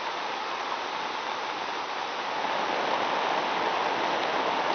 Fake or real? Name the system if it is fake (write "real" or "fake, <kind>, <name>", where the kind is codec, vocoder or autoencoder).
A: real